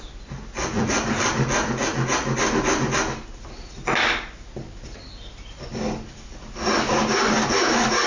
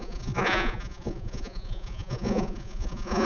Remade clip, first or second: second